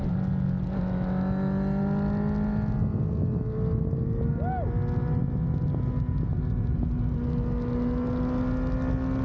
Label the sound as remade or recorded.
recorded